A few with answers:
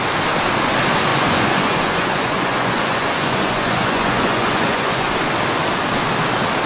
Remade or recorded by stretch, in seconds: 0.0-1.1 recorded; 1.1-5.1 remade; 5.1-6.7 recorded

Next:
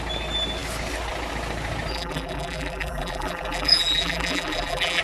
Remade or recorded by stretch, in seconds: 0.0-1.9 recorded; 1.9-5.0 remade